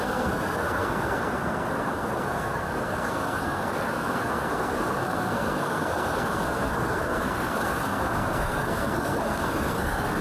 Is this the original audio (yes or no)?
no